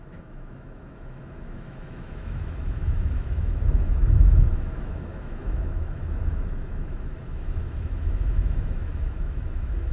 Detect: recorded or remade remade